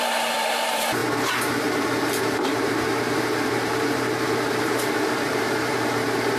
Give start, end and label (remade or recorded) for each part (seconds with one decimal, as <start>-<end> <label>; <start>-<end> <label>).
0.0-6.4 remade

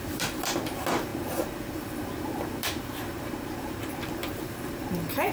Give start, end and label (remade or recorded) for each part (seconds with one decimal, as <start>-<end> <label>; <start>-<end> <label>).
0.0-5.3 remade

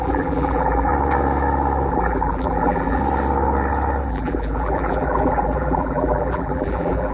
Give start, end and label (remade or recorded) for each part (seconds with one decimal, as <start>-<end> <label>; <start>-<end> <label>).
0.0-0.9 remade; 0.9-1.9 recorded; 1.9-3.0 remade; 3.0-4.1 recorded; 4.1-7.1 remade

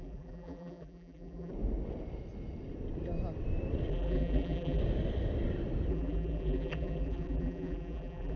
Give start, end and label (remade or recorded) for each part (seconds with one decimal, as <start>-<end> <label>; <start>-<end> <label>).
0.0-1.5 remade; 1.5-3.9 recorded; 3.9-4.8 remade; 4.8-5.9 recorded; 5.9-8.4 remade

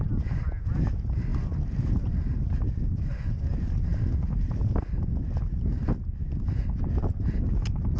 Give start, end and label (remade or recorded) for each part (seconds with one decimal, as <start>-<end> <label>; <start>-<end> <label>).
0.0-1.3 recorded; 1.3-1.9 remade; 1.9-3.9 recorded; 3.9-4.6 remade; 4.6-8.0 recorded

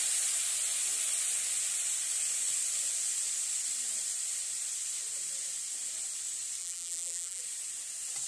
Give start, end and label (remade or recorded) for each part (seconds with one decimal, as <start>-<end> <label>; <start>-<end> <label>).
0.0-6.6 recorded; 6.6-7.4 remade; 7.4-8.3 recorded

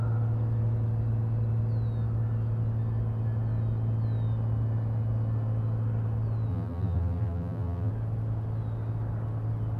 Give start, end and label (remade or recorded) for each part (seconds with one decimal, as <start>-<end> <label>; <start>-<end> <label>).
0.0-6.5 recorded; 6.5-7.9 remade; 7.9-9.8 recorded